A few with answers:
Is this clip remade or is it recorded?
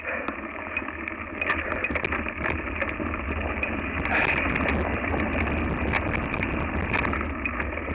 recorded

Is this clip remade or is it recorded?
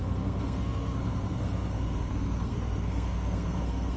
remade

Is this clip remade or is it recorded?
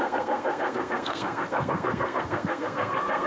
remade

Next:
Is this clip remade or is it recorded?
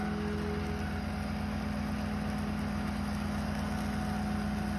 recorded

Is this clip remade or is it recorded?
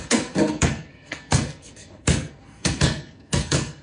remade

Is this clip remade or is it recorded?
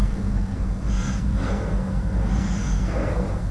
remade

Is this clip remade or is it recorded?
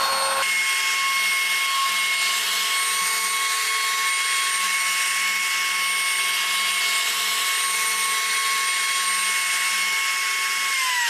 recorded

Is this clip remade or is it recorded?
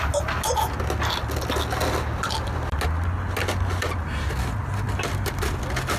recorded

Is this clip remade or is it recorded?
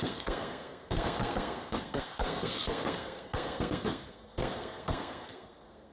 remade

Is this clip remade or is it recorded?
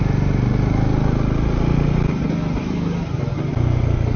recorded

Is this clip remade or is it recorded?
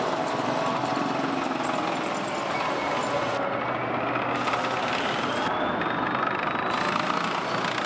recorded